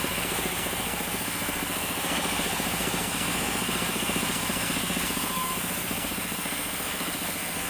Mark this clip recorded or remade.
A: remade